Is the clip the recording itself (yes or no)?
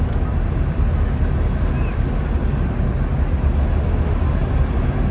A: yes